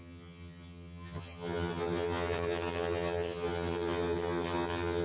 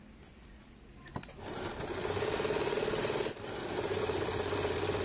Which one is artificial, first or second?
first